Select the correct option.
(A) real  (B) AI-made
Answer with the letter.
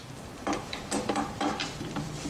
B